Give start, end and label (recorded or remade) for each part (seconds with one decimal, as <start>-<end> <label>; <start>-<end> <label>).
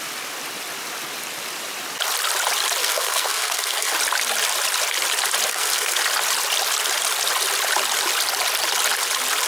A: 0.0-2.8 recorded; 2.8-3.9 remade; 3.9-5.5 recorded; 5.5-6.0 remade; 6.0-9.5 recorded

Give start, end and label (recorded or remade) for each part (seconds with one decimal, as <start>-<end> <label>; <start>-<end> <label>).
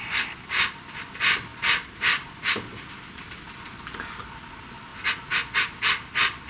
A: 0.0-6.5 recorded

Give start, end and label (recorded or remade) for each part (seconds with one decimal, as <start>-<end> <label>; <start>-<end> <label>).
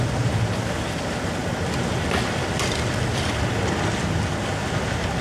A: 0.0-5.2 recorded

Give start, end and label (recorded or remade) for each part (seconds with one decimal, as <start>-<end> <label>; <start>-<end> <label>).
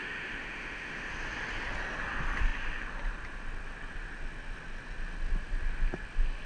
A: 0.0-1.1 remade; 1.1-6.5 recorded